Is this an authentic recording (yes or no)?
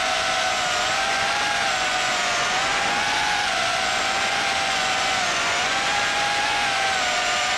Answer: no